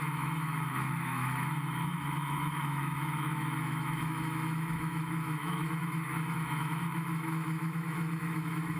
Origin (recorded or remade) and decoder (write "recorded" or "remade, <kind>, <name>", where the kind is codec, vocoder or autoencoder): remade, autoencoder, DAC-VAE